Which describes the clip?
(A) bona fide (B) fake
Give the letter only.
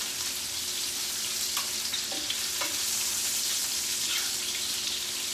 A